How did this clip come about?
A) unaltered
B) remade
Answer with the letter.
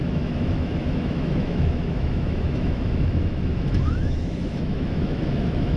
B